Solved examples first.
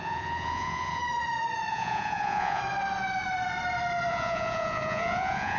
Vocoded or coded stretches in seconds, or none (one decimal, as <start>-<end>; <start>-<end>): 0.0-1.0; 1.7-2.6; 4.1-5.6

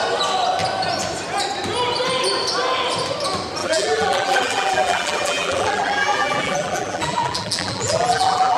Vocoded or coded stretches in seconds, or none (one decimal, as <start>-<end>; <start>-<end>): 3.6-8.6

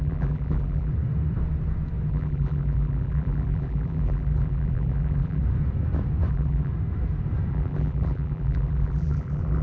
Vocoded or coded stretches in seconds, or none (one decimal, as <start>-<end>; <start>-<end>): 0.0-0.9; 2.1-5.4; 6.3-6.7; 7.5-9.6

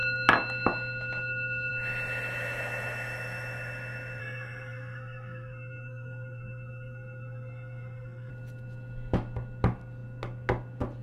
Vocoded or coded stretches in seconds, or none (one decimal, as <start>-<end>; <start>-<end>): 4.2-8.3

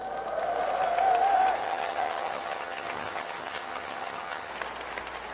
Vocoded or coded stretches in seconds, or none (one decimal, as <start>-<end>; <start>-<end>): 1.6-4.5